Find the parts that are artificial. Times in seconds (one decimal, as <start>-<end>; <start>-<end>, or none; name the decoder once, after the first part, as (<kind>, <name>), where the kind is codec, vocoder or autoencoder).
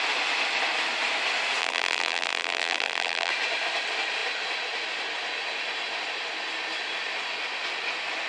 1.6-3.3 (vocoder, BigVGAN v2)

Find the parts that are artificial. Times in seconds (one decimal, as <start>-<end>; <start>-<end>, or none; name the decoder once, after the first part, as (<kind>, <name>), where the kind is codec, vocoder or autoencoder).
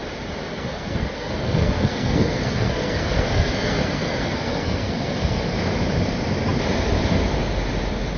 0.5-5.4 (codec, SNAC)